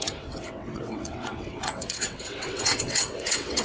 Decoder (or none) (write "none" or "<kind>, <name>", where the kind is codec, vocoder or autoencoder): vocoder, WaveNeXt